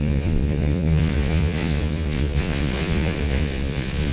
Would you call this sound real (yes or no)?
no